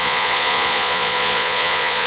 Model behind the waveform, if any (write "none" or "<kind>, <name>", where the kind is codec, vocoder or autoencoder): vocoder, Vocos